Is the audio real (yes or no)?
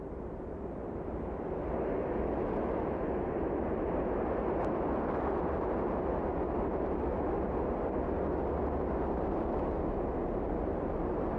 yes